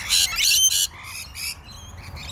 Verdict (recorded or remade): recorded